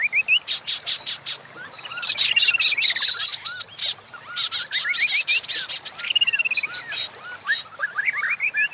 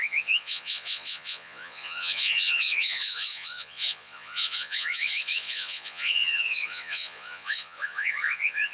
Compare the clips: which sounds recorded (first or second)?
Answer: first